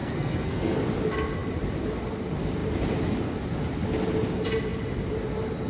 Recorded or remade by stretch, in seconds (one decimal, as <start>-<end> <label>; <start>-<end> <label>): 0.0-0.8 remade; 0.8-5.7 recorded